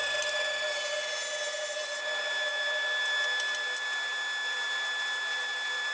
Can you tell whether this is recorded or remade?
recorded